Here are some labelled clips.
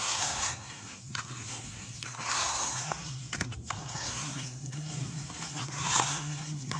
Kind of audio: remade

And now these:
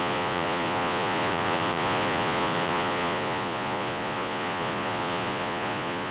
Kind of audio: remade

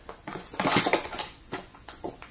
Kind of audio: remade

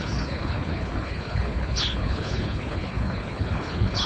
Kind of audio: remade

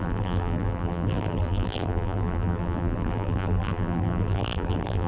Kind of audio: remade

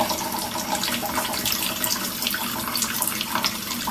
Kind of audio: recorded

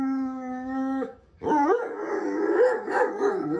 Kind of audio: remade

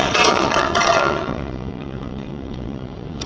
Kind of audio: remade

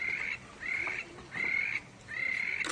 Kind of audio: recorded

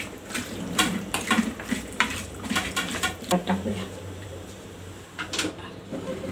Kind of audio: remade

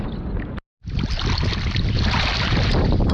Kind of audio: recorded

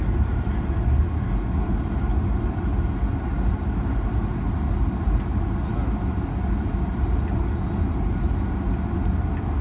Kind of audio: recorded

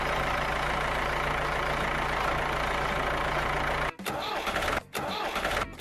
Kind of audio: recorded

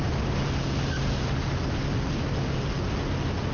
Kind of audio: recorded